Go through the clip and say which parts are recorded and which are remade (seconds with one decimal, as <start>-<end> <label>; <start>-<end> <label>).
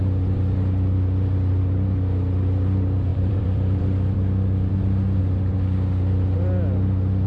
0.0-3.1 recorded; 3.1-3.8 remade; 3.8-4.7 recorded; 4.7-5.2 remade; 5.2-7.3 recorded